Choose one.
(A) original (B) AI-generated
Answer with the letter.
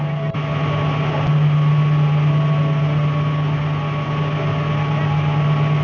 A